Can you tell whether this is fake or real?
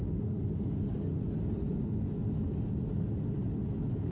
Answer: real